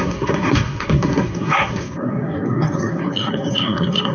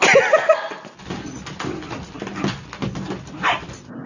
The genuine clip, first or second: second